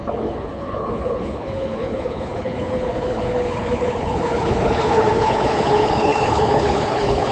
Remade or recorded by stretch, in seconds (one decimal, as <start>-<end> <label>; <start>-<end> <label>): 0.0-7.3 remade